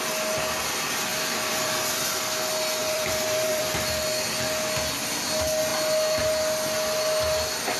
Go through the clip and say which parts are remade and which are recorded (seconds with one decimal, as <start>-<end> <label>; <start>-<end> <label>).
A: 0.0-1.1 recorded; 1.1-2.0 remade; 2.0-2.8 recorded; 2.8-3.6 remade; 3.6-7.8 recorded